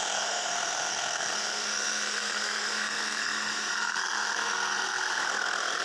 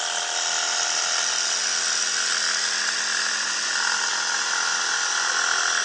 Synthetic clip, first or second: first